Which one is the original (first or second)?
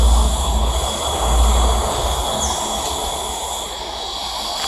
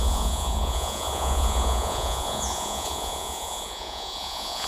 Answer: first